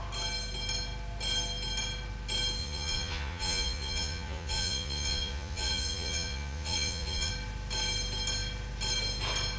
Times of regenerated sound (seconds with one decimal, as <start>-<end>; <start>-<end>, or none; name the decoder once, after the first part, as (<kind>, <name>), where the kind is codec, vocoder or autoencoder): 2.6-7.3 (vocoder, Vocos)